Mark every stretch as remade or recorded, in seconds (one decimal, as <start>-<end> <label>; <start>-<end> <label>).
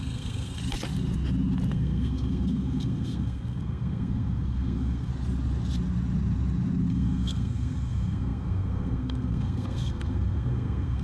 0.0-0.6 remade; 0.6-1.7 recorded; 1.7-5.1 remade; 5.1-6.9 recorded; 6.9-11.0 remade